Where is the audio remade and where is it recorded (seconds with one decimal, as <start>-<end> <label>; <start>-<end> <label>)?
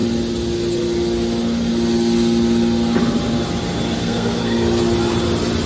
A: 0.0-4.0 recorded; 4.0-4.8 remade; 4.8-5.7 recorded